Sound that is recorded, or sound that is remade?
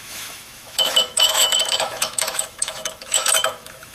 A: remade